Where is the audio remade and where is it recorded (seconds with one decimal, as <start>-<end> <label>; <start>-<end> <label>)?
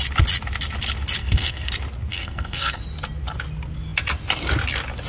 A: 0.0-1.2 recorded; 1.2-1.7 remade; 1.7-2.1 recorded; 2.1-2.8 remade; 2.8-5.1 recorded